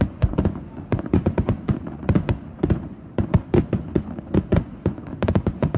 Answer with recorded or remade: remade